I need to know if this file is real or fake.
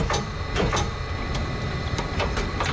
real